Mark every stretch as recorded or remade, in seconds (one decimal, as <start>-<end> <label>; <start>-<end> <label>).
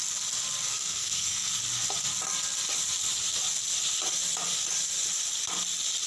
0.0-0.7 recorded; 0.7-1.6 remade; 1.6-6.1 recorded